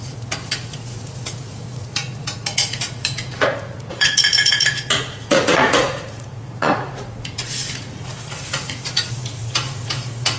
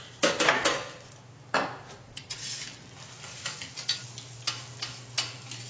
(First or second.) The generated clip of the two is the first